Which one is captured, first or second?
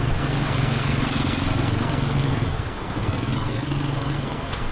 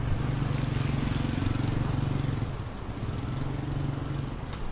second